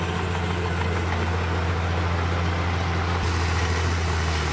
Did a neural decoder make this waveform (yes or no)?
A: no